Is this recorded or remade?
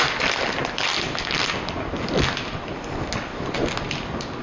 recorded